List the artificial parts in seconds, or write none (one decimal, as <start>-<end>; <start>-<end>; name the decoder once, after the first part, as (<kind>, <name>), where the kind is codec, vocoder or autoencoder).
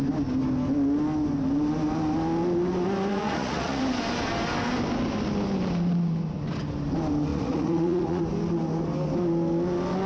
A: 3.1-3.8 (vocoder, Vocos); 7.3-8.2